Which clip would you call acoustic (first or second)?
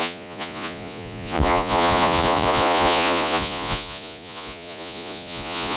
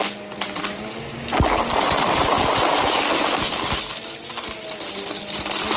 second